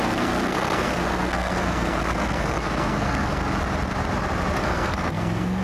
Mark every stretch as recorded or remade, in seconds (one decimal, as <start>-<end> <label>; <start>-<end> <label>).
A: 0.0-3.4 remade; 3.4-4.6 recorded; 4.6-5.6 remade